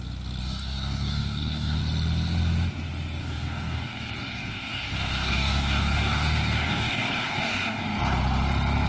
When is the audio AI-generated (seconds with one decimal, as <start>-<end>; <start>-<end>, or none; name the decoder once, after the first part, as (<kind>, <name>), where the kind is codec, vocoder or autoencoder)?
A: 0.4-1.8 (codec, DAC); 3.2-7.8